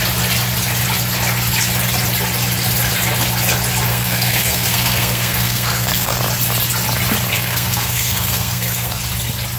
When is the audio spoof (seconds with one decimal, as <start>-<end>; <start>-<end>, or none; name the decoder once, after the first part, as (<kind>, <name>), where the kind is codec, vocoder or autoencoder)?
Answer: 3.9-6.2 (codec, SNAC); 7.3-9.0